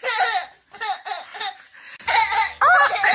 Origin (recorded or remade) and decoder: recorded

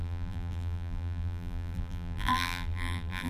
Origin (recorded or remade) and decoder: remade, vocoder, BigVGAN v2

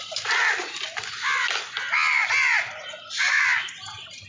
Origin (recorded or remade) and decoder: recorded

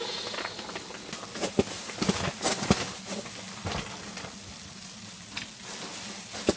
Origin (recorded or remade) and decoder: recorded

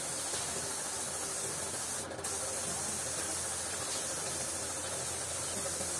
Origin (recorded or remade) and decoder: recorded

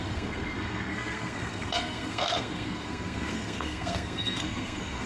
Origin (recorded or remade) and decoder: remade, codec, SNAC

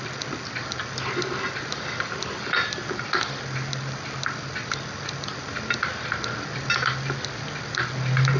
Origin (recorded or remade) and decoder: recorded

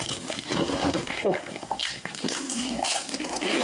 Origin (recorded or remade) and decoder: remade, codec, SNAC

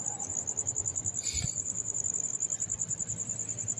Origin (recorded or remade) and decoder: recorded